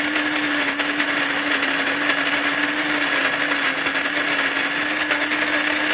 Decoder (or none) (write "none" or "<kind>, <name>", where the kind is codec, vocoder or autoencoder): none